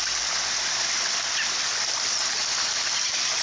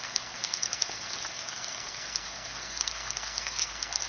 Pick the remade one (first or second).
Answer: second